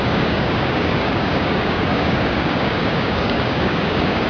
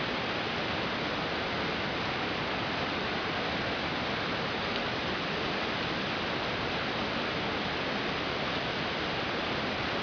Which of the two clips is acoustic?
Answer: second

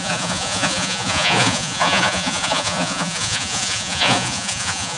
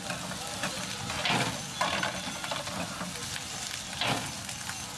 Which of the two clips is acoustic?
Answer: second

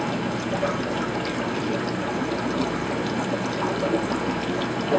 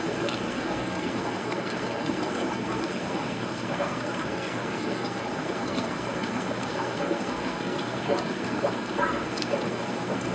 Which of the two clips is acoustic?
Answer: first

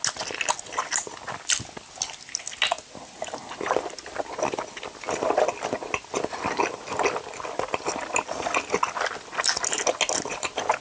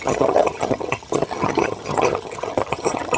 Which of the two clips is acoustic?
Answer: first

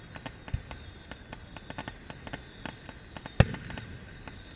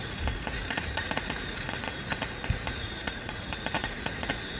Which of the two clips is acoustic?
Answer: first